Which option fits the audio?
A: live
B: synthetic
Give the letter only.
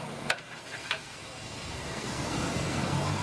B